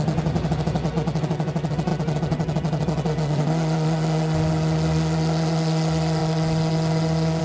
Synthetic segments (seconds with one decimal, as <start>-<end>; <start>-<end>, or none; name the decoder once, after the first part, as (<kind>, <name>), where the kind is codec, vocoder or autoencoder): none